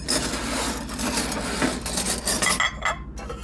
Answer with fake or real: real